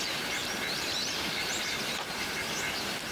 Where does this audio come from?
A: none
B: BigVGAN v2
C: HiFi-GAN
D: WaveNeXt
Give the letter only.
B